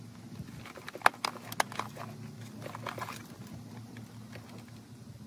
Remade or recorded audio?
recorded